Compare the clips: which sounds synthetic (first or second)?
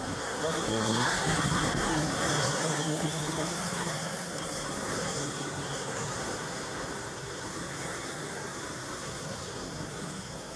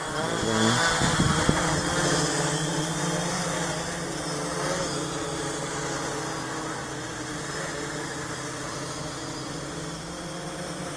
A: first